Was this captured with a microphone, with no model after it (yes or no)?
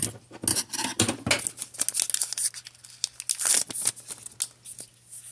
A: yes